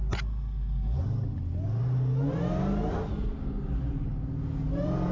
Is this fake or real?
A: real